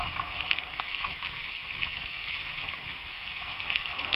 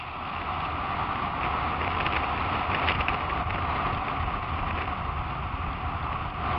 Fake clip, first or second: first